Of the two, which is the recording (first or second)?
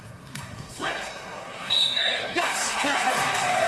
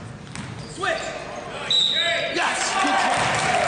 second